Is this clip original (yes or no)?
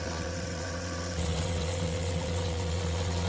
no